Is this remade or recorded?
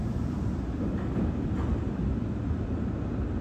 recorded